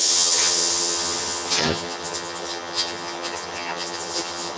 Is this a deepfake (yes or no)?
yes